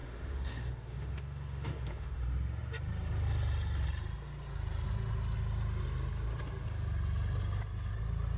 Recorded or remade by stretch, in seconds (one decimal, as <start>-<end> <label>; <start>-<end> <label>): 0.0-2.2 remade; 2.2-8.4 recorded

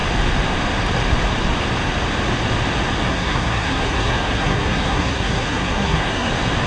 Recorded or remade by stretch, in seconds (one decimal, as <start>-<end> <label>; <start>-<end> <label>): 0.0-3.1 recorded; 3.1-6.3 remade; 6.3-6.7 recorded

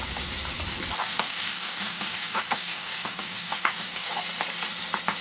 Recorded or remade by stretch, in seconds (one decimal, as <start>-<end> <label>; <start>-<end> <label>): 0.0-1.0 recorded; 1.0-4.1 remade; 4.1-5.2 recorded